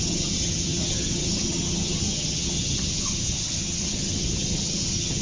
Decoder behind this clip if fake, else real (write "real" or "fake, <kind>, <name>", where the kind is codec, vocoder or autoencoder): fake, vocoder, HiFi-GAN